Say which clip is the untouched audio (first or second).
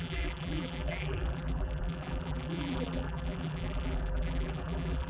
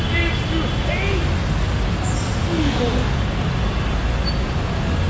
second